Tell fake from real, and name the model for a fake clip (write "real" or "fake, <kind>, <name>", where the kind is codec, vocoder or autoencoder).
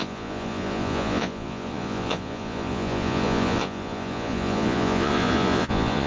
fake, vocoder, Vocos